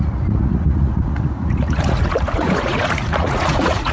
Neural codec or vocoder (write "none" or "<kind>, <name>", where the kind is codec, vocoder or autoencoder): vocoder, Vocos